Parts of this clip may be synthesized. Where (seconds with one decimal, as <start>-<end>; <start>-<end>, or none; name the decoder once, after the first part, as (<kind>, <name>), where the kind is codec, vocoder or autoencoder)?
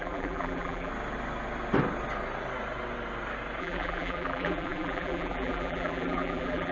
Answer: 0.0-0.9 (vocoder, BigVGAN v2); 3.6-6.7